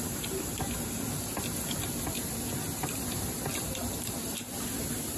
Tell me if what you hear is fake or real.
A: real